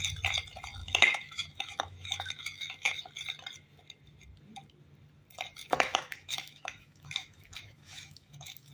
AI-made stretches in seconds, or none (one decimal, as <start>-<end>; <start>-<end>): 0.8-3.0; 5.6-8.7